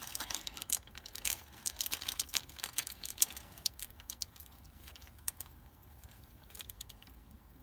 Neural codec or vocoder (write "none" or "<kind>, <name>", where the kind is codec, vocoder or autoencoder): codec, SNAC